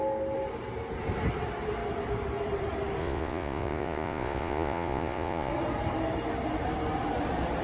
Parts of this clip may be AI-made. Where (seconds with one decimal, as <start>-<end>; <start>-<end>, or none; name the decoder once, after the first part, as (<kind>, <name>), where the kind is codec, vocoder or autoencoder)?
3.0-5.5 (vocoder, Vocos)